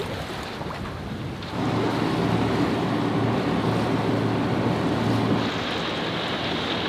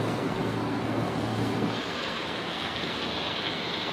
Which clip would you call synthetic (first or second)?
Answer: second